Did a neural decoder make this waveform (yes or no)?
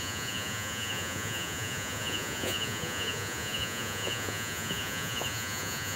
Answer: yes